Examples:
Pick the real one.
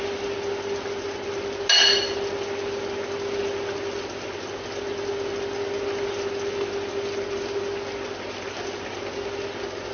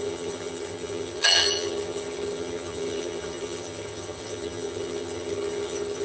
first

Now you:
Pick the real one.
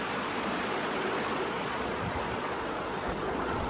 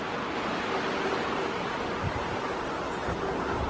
second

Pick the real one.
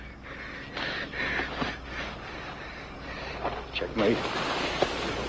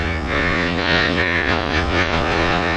first